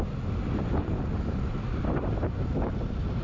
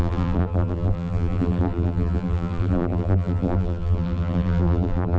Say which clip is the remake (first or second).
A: second